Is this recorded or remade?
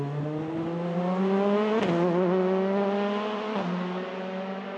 recorded